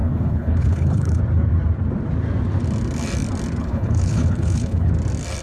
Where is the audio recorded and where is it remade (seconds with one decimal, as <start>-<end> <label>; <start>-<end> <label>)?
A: 0.0-1.2 remade; 1.2-3.6 recorded; 3.6-4.9 remade; 4.9-5.4 recorded